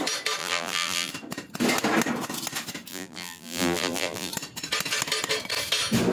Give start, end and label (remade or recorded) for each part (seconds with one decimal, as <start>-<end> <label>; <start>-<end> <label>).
0.0-0.4 recorded; 0.4-1.1 remade; 1.1-2.9 recorded; 2.9-4.3 remade; 4.3-6.1 recorded